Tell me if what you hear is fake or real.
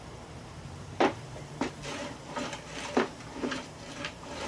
fake